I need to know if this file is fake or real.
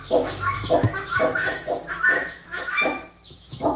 fake